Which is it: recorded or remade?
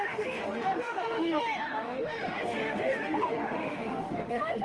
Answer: remade